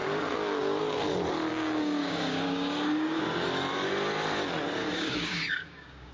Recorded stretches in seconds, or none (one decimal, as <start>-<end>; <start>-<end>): 0.0-1.5; 3.2-4.8